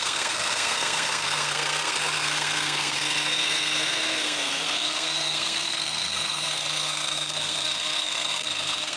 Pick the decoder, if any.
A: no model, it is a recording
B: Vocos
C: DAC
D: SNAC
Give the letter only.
D